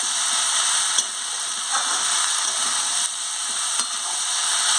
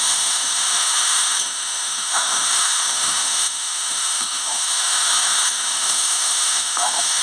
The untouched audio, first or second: first